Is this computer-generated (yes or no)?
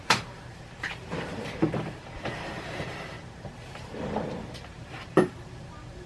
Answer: yes